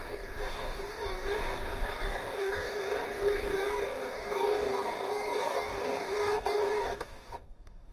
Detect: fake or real fake